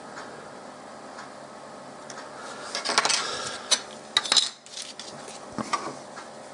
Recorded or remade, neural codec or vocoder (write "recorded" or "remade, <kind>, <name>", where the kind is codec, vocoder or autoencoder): recorded